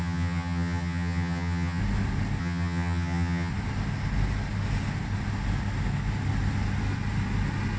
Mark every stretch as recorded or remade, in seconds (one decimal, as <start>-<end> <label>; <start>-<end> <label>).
0.0-1.8 remade; 1.8-2.4 recorded; 2.4-3.5 remade; 3.5-7.8 recorded